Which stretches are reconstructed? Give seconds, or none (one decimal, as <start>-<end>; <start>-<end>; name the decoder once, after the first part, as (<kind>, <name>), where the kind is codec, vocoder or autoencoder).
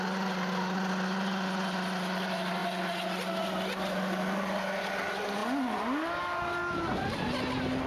none